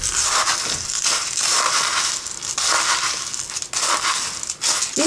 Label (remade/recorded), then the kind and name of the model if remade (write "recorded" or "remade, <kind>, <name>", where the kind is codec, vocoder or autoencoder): recorded